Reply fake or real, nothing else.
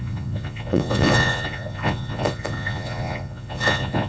fake